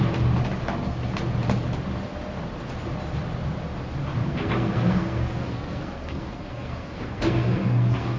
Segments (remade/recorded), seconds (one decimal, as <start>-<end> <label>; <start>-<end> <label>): 0.0-4.2 recorded; 4.2-8.2 remade